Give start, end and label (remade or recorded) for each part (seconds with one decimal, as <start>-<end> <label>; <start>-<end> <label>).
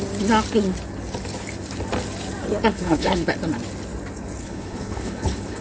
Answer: 0.0-2.7 recorded; 2.7-3.3 remade; 3.3-4.4 recorded; 4.4-5.6 remade